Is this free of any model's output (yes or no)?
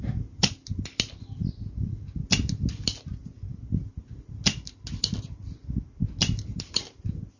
yes